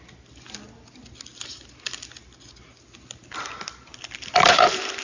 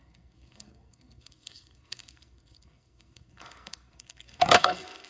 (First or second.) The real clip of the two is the first